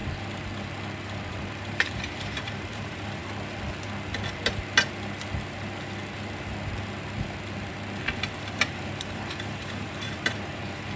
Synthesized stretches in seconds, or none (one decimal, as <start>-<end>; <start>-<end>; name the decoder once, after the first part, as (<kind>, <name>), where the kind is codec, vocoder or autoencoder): 1.3-3.2 (vocoder, BigVGAN v2); 8.3-11.0